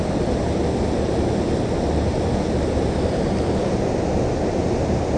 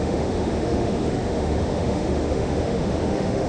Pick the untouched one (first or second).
first